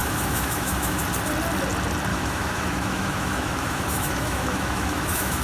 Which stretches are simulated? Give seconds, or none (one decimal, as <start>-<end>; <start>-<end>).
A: 0.0-1.0; 2.1-5.4

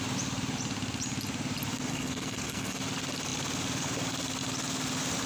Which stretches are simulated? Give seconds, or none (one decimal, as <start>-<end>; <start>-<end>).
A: 1.9-2.8

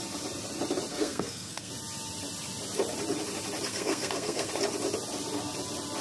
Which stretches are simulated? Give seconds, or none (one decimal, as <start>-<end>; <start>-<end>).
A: 0.9-1.7; 3.7-4.5

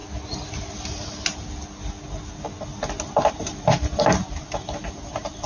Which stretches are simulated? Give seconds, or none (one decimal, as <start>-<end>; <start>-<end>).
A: 3.3-5.5

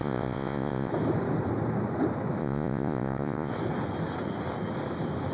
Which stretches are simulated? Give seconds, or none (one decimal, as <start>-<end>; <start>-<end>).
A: 0.0-0.9; 2.4-3.5

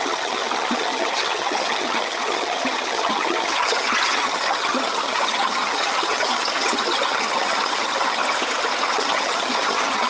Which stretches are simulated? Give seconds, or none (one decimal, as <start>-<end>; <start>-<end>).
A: 0.0-8.2; 8.9-10.1